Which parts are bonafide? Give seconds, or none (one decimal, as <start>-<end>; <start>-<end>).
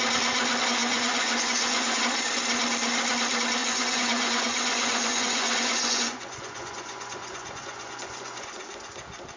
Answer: 0.0-0.8; 2.0-3.6; 8.7-9.4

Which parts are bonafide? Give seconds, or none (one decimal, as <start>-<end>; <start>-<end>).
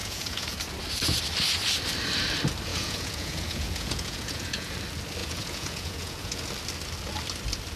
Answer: 0.6-2.7; 4.7-5.2; 6.4-7.8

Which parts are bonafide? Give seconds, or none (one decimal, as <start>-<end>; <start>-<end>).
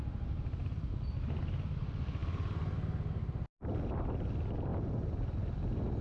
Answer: 0.0-6.0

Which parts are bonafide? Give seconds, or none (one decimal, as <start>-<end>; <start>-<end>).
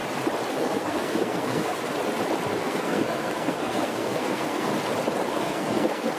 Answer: 0.0-0.5; 1.7-2.6; 4.7-5.3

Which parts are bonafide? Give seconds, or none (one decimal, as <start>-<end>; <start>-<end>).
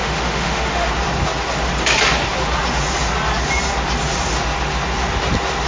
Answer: 0.9-5.7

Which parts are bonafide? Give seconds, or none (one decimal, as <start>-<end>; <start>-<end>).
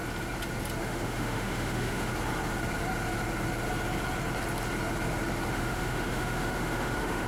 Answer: 0.0-0.8; 2.1-5.5